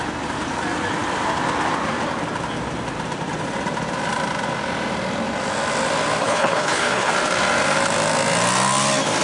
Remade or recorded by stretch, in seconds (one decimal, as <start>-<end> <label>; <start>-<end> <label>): 0.0-6.2 recorded; 6.2-7.1 remade; 7.1-9.2 recorded